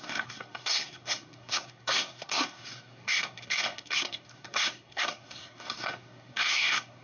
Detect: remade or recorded remade